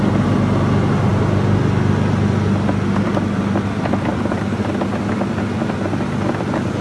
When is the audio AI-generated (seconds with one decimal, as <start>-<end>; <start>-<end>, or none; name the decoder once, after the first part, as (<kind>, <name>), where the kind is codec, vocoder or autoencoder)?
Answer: none